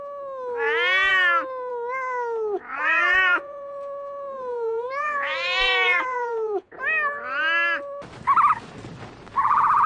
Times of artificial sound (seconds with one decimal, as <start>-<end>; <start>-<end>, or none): 2.7-6.8